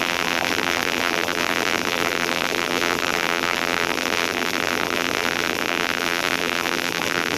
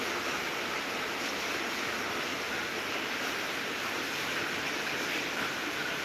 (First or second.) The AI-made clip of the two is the first